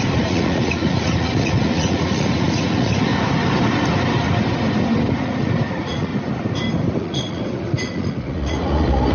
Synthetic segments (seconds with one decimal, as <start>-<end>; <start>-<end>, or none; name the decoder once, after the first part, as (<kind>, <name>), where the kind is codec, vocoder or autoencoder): 0.0-3.1 (vocoder, Vocos); 5.1-6.1; 7.0-9.1